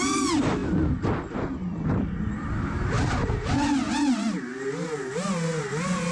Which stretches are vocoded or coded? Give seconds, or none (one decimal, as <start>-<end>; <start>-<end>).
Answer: none